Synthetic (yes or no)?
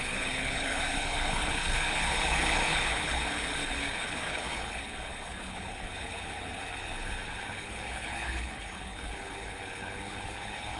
yes